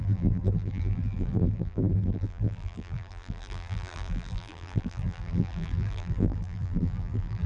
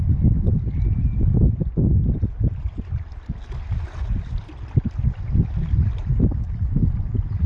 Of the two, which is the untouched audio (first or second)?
second